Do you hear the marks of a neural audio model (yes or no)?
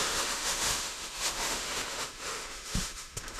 yes